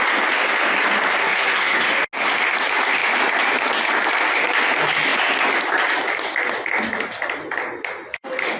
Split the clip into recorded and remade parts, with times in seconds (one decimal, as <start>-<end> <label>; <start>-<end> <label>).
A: 0.0-1.2 recorded; 1.2-1.8 remade; 1.8-8.6 recorded